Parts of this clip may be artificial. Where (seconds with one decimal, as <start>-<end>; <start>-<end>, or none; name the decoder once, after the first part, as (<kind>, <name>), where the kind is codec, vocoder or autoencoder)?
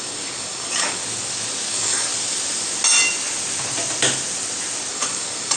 0.0-1.0 (codec, DAC); 1.7-2.1; 4.9-5.6